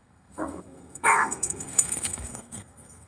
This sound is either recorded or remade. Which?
remade